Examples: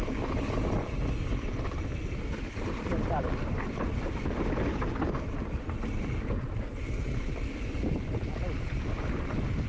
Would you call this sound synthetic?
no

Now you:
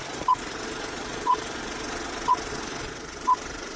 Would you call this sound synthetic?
yes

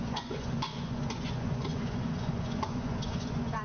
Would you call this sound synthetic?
yes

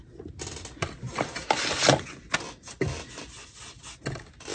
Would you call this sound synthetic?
no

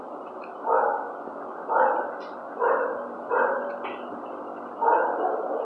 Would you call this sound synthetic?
no